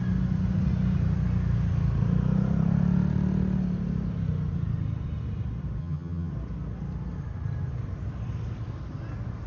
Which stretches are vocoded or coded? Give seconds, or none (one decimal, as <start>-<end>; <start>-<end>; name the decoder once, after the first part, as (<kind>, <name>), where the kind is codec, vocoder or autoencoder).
5.8-6.3 (vocoder, HiFi-GAN)